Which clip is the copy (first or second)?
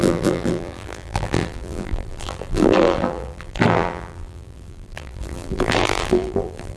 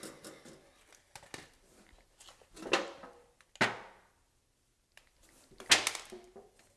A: first